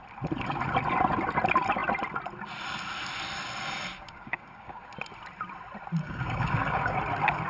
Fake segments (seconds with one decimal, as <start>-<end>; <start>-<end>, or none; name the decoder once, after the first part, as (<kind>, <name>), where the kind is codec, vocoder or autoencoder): 3.9-4.9 (codec, DAC); 6.0-7.0